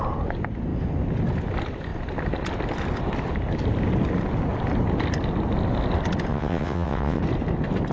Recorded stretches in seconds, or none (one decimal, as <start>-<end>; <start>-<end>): 0.0-6.3; 7.2-7.9